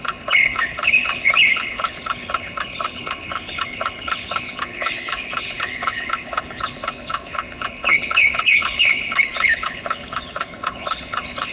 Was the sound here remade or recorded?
remade